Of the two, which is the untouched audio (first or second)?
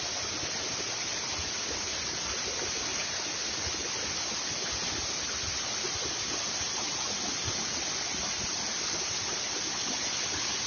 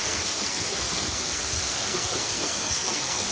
first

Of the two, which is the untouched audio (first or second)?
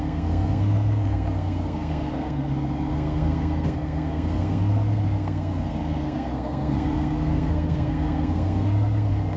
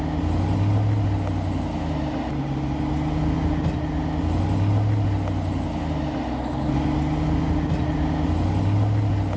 second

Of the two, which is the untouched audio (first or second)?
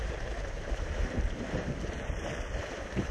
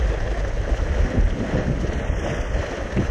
second